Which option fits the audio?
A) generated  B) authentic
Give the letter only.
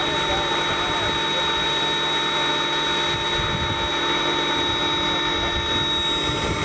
B